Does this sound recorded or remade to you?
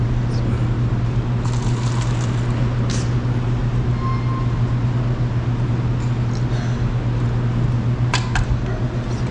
recorded